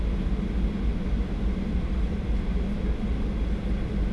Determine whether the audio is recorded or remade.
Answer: recorded